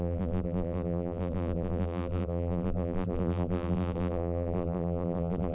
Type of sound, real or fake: fake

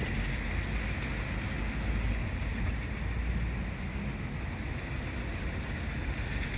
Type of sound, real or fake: real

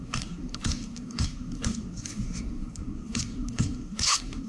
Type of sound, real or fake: fake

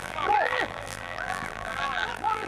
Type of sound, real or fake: fake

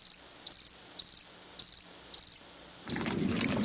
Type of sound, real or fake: real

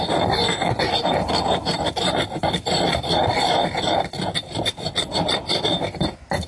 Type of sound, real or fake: fake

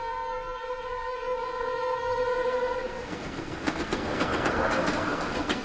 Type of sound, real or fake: fake